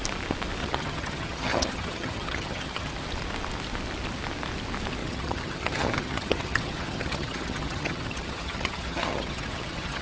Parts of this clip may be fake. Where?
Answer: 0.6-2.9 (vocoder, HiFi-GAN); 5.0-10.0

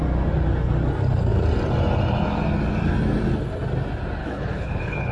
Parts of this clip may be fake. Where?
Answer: 4.2-5.1 (codec, HILCodec)

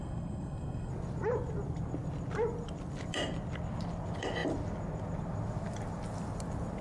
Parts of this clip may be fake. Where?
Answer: 0.0-0.9 (codec, SNAC)

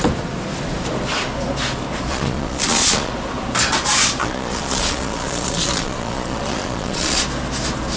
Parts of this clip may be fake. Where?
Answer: 2.1-3.1 (vocoder, Vocos); 4.2-7.2

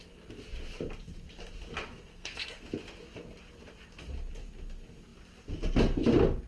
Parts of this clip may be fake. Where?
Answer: 2.1-2.6 (codec, SNAC)

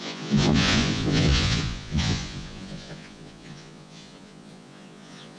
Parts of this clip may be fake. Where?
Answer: 0.0-5.4 (vocoder, Vocos)

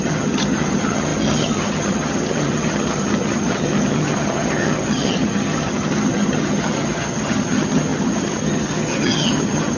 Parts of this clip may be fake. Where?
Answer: 0.0-9.8 (vocoder, HiFi-GAN)

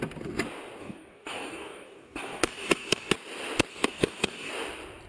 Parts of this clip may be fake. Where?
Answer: 0.8-3.1 (codec, DAC); 3.7-4.5